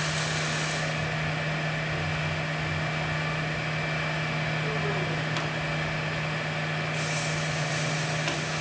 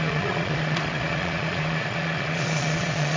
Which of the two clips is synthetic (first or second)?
second